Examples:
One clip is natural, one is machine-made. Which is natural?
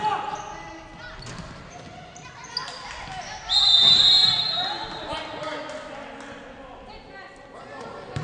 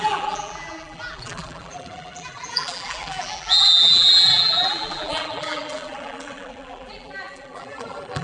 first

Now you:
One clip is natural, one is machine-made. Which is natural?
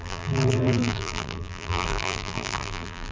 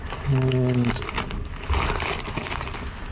second